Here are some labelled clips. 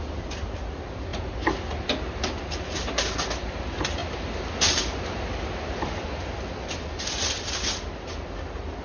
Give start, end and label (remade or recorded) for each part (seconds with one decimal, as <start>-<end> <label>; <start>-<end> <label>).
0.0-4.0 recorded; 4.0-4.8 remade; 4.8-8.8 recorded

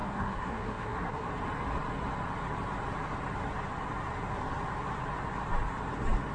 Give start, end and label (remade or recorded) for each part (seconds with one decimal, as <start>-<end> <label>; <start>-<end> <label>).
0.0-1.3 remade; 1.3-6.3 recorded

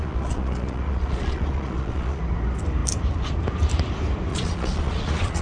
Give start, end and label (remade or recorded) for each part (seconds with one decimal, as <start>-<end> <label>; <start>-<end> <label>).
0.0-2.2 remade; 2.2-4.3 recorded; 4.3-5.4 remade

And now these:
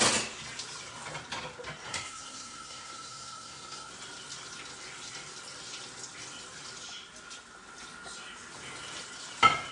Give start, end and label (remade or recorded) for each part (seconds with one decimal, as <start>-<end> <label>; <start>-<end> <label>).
0.0-1.9 recorded; 1.9-3.9 remade; 3.9-9.7 recorded